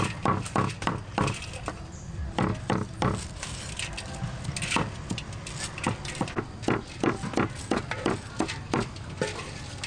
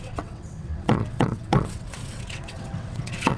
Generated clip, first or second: second